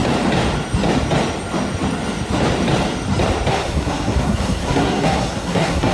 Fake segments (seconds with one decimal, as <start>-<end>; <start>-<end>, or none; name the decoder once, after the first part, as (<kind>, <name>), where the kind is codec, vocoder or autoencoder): 3.5-5.9 (codec, SNAC)